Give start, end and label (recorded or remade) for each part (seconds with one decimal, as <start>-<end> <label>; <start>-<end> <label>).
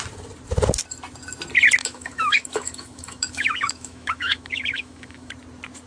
0.0-1.8 recorded; 1.8-5.3 remade; 5.3-5.9 recorded